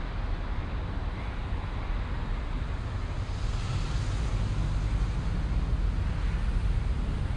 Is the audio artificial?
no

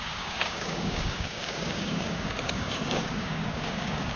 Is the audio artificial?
yes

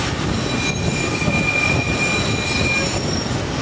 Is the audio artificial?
no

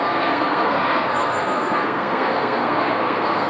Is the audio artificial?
yes